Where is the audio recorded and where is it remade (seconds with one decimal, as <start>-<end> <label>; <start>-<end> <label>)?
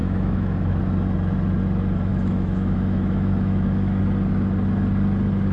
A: 0.0-0.7 remade; 0.7-2.1 recorded; 2.1-4.0 remade; 4.0-5.5 recorded